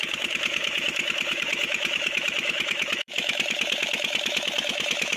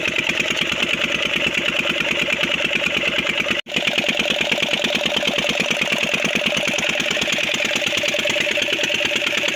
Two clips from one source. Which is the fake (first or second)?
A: first